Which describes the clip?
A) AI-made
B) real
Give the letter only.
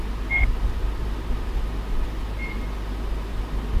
B